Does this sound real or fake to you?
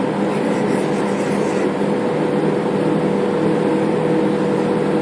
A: fake